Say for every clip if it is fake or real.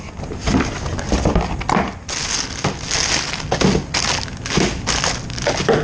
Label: real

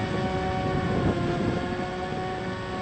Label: real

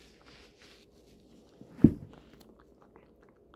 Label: real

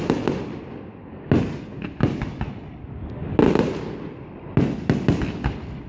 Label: real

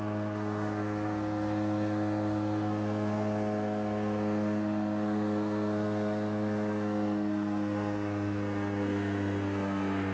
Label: fake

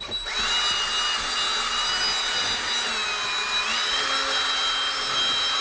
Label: real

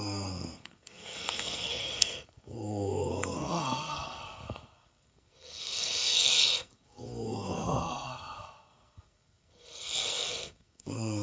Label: fake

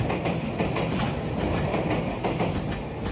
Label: real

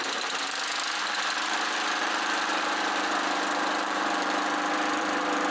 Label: fake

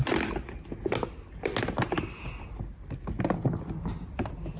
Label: real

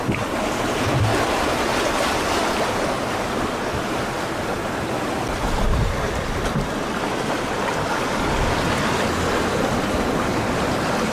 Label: real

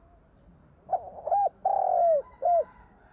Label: real